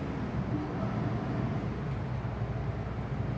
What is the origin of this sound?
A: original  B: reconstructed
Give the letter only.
A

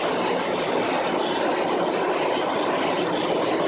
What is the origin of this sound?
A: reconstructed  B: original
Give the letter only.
B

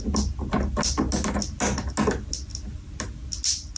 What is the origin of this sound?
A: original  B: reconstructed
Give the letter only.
A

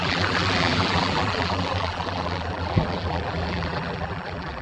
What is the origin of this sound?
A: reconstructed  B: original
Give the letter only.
A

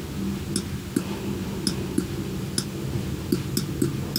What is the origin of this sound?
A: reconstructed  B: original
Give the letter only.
B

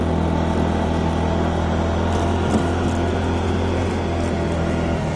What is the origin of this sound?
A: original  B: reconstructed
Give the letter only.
A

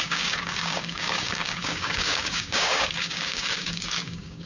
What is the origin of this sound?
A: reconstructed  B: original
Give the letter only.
A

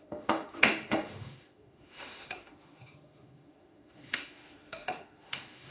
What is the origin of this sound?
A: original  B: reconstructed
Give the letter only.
B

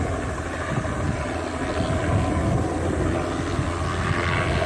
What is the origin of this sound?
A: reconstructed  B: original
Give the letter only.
B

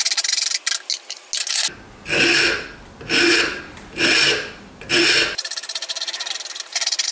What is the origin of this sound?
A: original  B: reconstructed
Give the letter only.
A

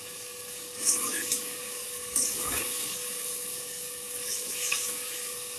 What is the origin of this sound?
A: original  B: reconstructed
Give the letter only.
B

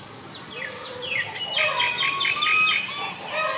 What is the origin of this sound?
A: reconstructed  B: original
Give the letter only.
B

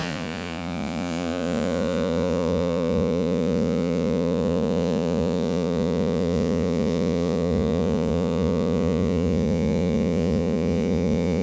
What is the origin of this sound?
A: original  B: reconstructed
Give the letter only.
B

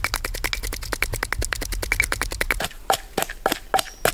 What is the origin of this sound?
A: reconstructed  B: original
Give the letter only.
B